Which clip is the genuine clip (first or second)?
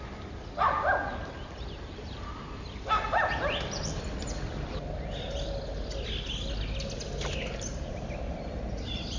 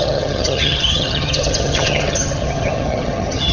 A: first